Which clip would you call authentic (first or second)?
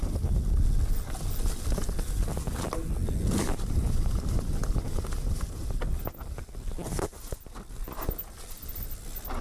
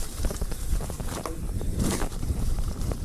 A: first